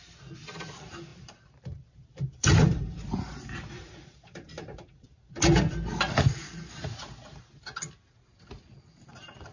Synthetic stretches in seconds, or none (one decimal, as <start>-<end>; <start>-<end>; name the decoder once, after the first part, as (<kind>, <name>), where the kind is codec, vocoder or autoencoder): 1.1-5.3 (vocoder, BigVGAN v2)